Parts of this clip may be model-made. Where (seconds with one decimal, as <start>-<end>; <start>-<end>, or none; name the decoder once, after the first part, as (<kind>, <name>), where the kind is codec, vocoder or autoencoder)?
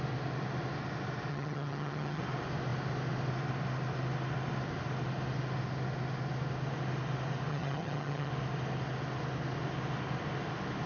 1.3-2.2 (vocoder, HiFi-GAN); 7.5-8.3